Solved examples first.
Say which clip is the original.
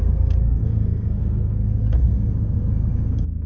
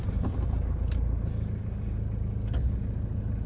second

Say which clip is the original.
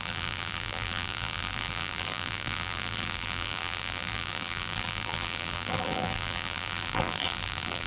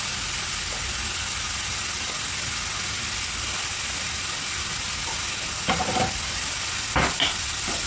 second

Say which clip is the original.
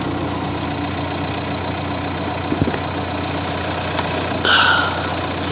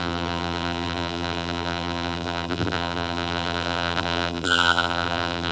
first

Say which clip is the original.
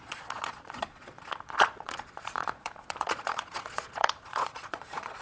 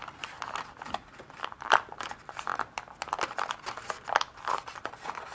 second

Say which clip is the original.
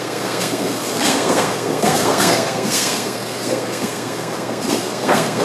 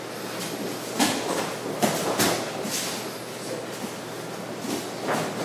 second